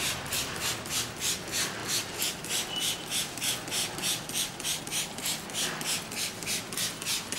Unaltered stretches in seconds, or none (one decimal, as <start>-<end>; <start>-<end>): 0.0-7.4